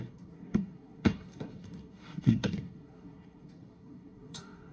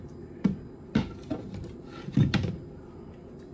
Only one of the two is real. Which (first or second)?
second